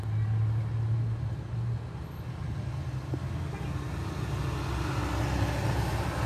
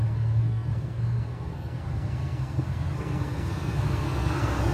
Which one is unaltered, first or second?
first